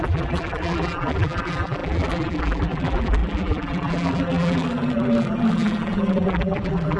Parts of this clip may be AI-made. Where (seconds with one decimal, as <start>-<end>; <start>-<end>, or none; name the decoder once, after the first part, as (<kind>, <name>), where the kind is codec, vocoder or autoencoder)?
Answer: 0.0-7.0 (vocoder, BigVGAN v2)